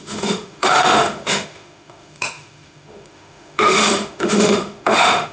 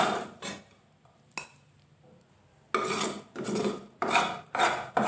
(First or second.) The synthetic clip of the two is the first